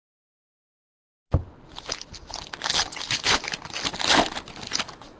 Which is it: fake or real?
real